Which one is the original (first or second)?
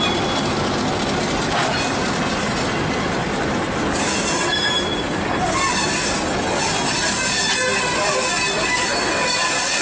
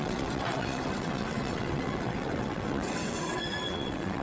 first